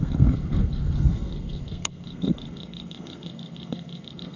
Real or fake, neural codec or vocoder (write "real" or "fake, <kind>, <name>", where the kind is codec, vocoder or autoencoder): fake, codec, SNAC